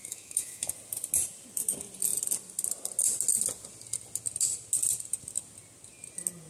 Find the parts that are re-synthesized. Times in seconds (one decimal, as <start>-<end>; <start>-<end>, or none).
0.0-0.7